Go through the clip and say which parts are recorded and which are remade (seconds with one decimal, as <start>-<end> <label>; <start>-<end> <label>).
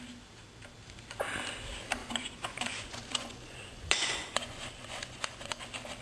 0.0-2.0 recorded; 2.0-5.6 remade; 5.6-6.0 recorded